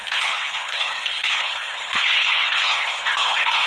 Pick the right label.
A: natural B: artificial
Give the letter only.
B